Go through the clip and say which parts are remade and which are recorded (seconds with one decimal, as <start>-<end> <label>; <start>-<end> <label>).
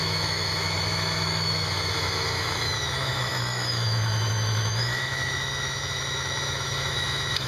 0.0-7.5 remade